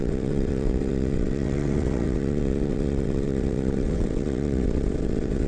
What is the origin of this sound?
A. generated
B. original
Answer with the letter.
A